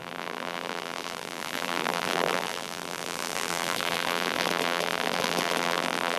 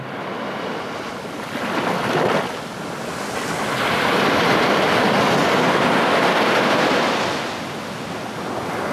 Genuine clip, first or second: second